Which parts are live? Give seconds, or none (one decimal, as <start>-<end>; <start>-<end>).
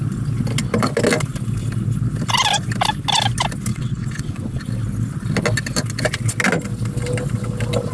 0.0-3.7; 4.6-7.9